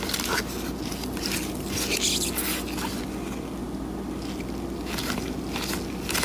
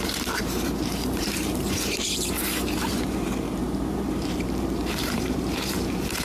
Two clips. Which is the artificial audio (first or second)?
second